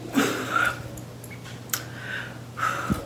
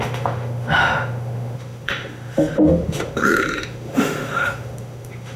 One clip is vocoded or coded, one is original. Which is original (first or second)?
first